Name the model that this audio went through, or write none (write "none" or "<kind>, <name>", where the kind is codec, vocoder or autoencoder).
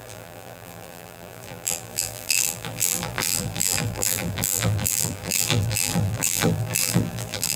vocoder, BigVGAN v2